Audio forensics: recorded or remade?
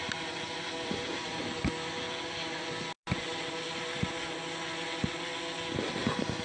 recorded